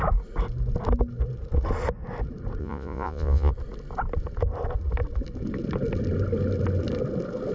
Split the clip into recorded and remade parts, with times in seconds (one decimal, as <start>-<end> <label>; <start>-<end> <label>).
0.0-2.6 recorded; 2.6-3.5 remade; 3.5-7.5 recorded